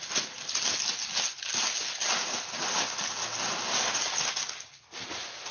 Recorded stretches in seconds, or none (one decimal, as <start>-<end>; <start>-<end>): 0.0-5.5